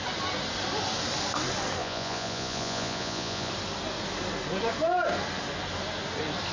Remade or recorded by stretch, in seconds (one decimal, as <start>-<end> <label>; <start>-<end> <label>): 0.0-1.8 recorded; 1.8-3.5 remade; 3.5-6.5 recorded